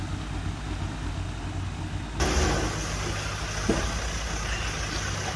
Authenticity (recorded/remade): recorded